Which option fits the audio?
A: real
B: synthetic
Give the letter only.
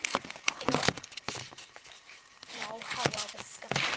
B